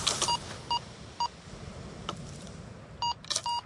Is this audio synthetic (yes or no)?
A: no